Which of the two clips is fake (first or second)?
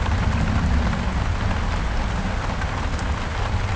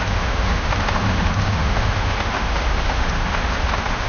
second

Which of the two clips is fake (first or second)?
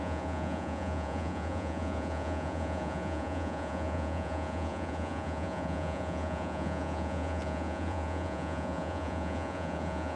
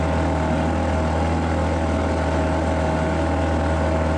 first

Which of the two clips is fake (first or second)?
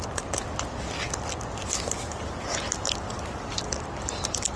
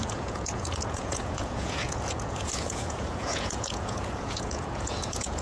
second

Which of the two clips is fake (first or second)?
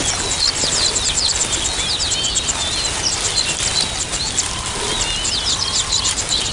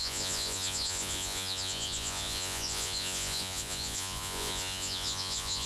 second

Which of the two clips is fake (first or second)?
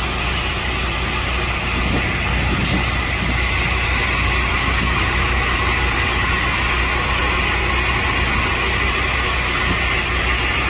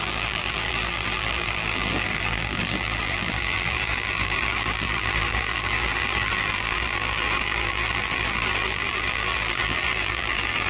second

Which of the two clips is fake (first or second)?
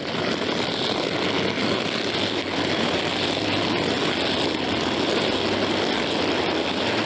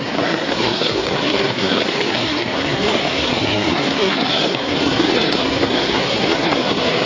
second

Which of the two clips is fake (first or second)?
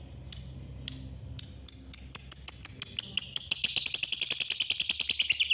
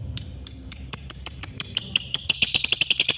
second